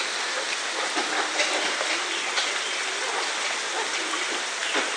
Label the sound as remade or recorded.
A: recorded